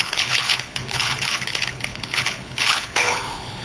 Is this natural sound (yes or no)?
no